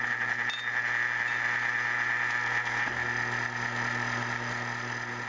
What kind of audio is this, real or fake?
real